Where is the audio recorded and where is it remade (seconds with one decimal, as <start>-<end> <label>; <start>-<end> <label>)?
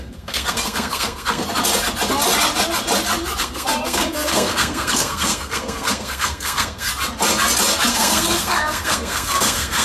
0.0-1.4 remade; 1.4-3.4 recorded; 3.4-6.9 remade; 6.9-7.9 recorded; 7.9-9.8 remade